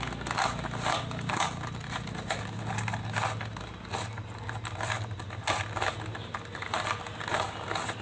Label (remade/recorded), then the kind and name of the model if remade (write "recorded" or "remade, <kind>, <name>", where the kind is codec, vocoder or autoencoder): recorded